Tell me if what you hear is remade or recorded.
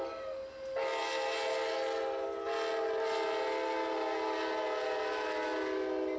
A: recorded